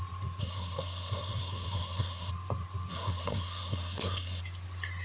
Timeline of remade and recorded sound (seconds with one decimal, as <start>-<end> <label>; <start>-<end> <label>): 0.0-0.4 recorded; 0.4-2.3 remade; 2.3-2.9 recorded; 2.9-4.4 remade; 4.4-5.0 recorded